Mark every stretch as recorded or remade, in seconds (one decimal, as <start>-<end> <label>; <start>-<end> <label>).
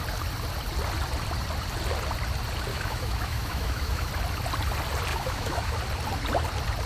0.0-2.7 recorded; 2.7-4.1 remade; 4.1-5.1 recorded; 5.1-5.8 remade; 5.8-6.9 recorded